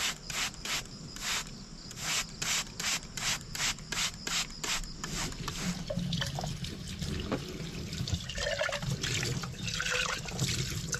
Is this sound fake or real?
real